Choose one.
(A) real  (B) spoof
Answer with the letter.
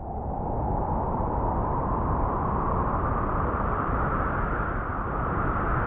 A